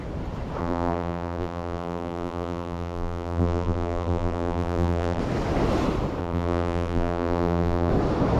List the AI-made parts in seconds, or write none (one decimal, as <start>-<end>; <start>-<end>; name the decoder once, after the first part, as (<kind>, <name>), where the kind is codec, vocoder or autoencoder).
0.6-5.2 (vocoder, BigVGAN v2); 6.2-7.9